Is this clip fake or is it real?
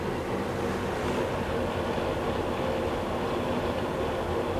real